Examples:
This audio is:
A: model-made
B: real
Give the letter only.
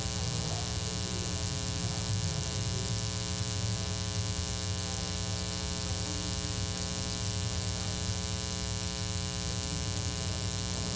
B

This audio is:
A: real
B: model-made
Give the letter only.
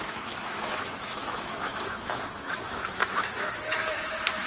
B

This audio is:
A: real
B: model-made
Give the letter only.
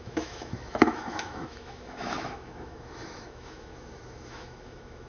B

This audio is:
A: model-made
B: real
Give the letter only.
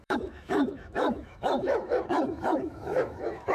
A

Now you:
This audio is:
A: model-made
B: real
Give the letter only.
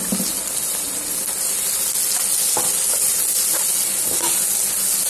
B